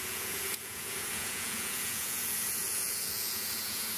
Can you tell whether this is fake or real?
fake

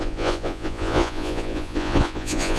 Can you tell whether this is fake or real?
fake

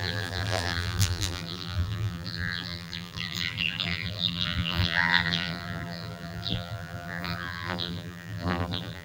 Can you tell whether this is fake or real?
fake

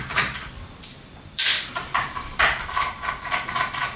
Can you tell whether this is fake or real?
fake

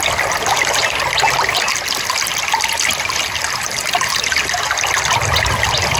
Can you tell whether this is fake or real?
real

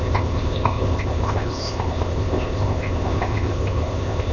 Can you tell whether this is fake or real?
fake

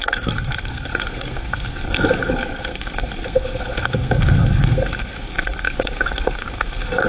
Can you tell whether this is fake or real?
fake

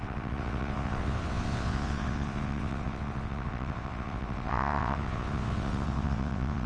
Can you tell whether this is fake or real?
fake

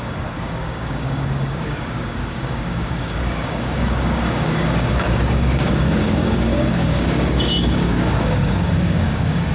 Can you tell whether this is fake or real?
fake